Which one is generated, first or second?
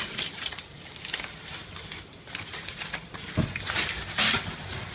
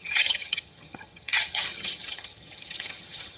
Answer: second